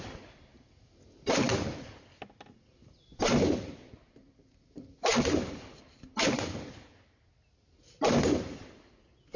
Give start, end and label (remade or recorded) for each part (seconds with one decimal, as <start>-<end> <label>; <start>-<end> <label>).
0.0-9.4 recorded